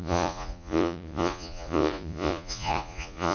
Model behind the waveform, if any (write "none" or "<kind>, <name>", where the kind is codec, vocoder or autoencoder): vocoder, Vocos